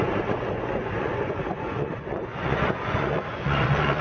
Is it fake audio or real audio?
fake